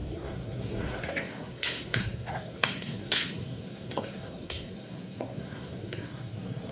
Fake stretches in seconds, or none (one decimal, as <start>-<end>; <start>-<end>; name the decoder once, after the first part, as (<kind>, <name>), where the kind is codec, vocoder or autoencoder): 0.0-6.7 (codec, SNAC)

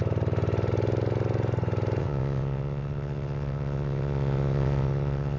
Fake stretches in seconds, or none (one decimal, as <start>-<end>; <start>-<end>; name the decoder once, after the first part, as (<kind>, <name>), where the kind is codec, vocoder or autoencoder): 2.0-5.4 (vocoder, WaveNeXt)

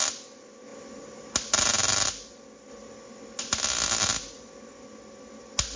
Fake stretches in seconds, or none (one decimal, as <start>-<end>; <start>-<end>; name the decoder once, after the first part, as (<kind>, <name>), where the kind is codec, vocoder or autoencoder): none

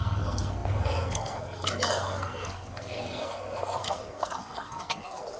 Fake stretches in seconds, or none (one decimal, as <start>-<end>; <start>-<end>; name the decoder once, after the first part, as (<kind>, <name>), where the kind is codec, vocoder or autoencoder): 0.0-5.4 (codec, SNAC)

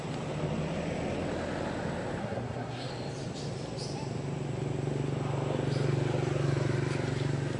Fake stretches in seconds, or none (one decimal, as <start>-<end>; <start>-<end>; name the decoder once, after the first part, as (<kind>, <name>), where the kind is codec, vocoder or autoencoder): 2.2-2.9 (codec, SNAC)

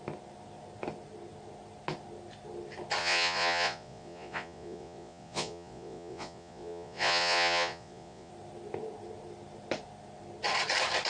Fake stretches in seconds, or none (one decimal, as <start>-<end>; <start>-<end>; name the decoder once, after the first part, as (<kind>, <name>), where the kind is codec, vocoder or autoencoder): 3.0-8.3 (vocoder, Vocos)